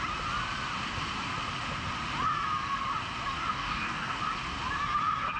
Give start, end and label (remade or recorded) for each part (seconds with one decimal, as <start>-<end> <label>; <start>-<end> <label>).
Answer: 0.0-3.5 recorded; 3.5-4.2 remade; 4.2-5.4 recorded